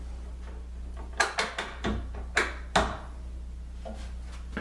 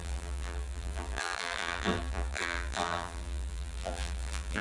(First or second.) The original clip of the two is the first